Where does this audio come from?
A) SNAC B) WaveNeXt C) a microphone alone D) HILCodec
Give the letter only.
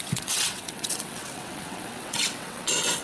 B